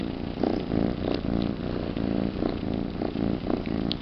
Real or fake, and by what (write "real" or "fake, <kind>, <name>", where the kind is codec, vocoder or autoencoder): real